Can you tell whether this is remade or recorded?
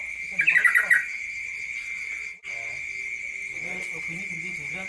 recorded